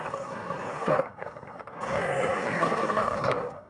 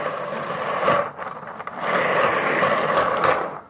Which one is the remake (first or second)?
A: first